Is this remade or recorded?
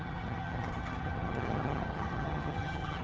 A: remade